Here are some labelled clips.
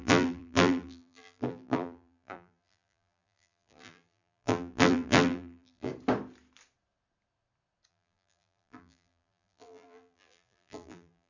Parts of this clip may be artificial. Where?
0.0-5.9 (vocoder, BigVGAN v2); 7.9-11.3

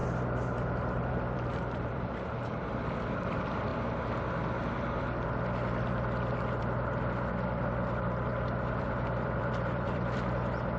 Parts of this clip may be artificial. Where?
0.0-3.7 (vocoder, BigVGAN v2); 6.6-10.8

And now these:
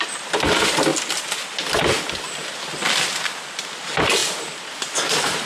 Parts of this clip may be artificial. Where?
none

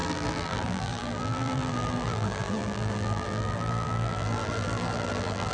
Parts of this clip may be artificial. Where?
0.0-5.5 (vocoder, BigVGAN v2)

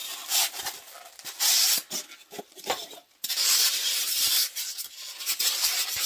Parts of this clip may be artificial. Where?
2.4-4.4 (vocoder, BigVGAN v2); 5.2-6.1